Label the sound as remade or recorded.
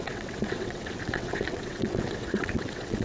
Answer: remade